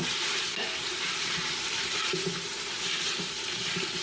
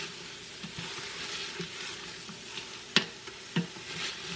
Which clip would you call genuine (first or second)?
second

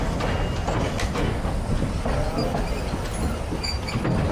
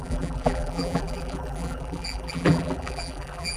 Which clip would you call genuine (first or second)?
first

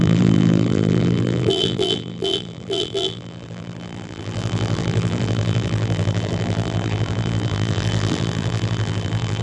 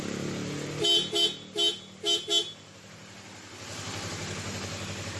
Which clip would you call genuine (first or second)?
second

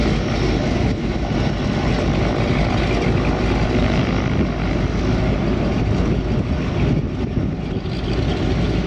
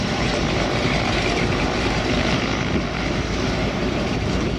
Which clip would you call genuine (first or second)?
first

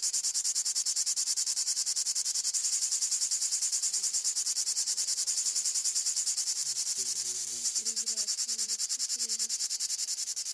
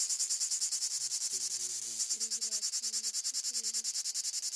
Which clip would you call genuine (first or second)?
second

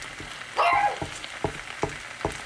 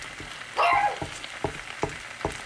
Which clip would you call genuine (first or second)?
first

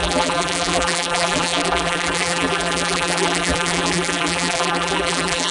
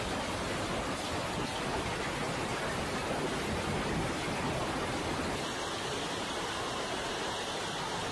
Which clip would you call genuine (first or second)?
second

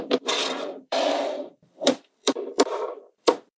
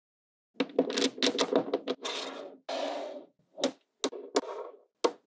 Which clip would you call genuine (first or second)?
second